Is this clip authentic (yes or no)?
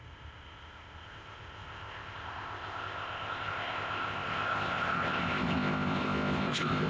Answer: no